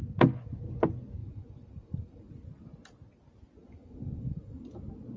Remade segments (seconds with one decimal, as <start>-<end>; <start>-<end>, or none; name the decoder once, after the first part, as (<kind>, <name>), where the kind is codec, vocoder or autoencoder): 1.2-2.3 (vocoder, BigVGAN v2); 3.6-4.6